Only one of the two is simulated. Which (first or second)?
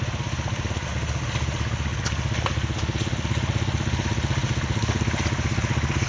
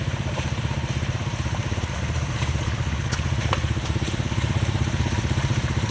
second